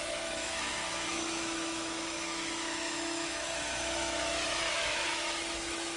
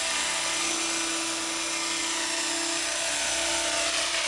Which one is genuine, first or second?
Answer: second